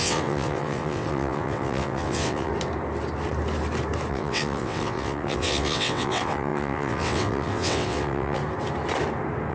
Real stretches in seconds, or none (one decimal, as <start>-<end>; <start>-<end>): 2.5-4.1; 8.4-9.5